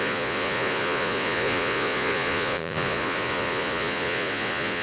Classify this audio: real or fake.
fake